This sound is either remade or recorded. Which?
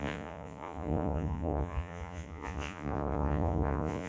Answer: remade